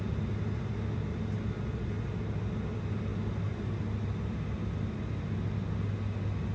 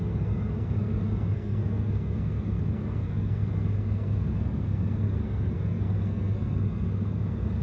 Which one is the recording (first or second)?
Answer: first